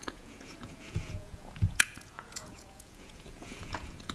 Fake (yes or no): yes